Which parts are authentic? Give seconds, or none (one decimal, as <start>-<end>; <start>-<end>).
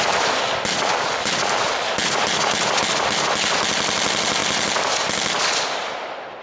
0.0-6.4